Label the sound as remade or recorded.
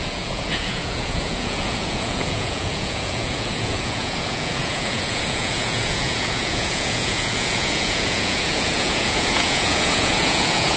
remade